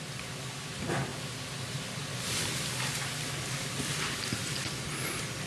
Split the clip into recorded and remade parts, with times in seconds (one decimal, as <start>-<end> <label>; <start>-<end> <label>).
0.0-5.5 recorded